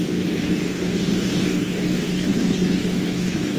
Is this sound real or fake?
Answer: fake